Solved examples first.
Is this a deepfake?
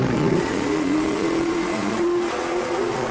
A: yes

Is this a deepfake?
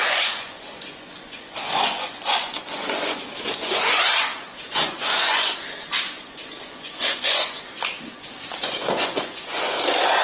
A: yes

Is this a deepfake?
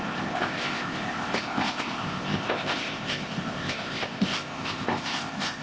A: yes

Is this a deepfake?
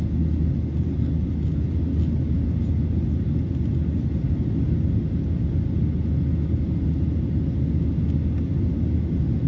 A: no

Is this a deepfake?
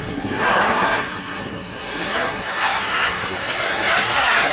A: yes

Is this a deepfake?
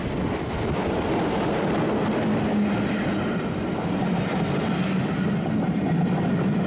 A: no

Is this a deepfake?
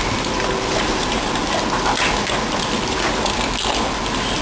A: no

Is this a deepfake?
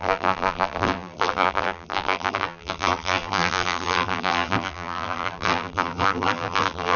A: yes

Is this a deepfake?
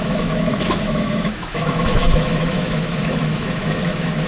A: yes